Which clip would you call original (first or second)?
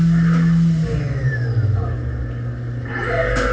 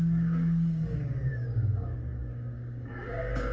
first